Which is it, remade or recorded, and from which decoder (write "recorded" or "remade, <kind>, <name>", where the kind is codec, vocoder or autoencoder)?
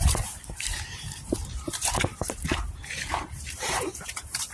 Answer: remade, vocoder, BigVGAN v2